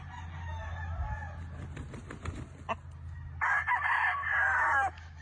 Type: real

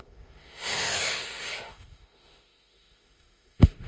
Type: fake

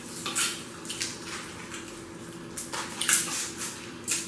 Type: real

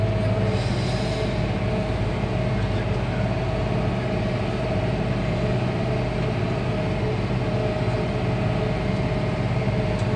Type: real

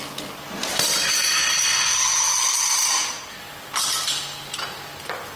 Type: real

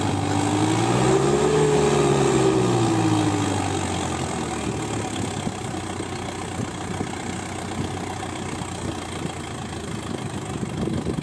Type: real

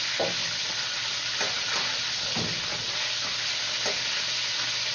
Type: real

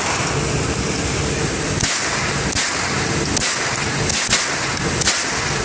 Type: real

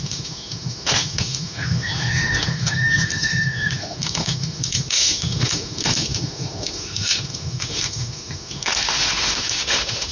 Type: fake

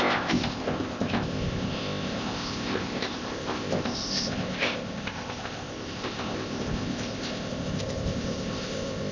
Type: fake